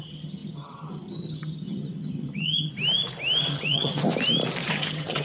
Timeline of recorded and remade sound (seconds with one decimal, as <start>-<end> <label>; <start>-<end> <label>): 0.0-2.7 remade; 2.7-3.4 recorded; 3.4-4.0 remade; 4.0-4.7 recorded; 4.7-5.2 remade